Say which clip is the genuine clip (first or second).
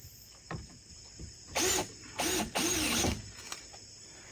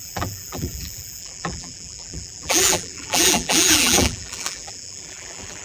first